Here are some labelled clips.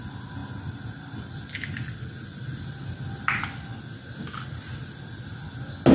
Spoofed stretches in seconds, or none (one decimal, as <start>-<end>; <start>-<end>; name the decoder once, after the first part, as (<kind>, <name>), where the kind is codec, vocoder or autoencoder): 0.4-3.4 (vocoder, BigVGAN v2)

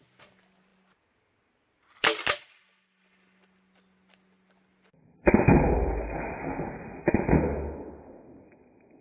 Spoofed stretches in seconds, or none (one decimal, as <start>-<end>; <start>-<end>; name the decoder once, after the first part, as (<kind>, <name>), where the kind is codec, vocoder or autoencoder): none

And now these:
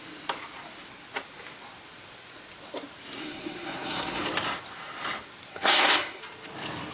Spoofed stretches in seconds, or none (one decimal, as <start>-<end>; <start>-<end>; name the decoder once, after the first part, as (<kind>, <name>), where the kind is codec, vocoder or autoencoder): 3.2-4.2 (codec, SNAC); 5.5-6.2

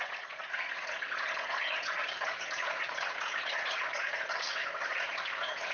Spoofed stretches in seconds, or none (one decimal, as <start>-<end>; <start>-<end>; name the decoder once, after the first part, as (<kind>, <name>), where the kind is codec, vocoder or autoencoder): 0.0-5.7 (vocoder, Vocos)